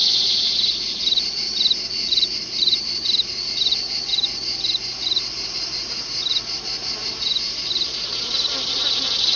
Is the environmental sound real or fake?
fake